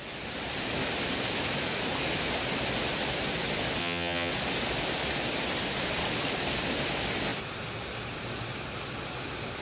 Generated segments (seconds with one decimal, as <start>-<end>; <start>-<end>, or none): 3.8-4.3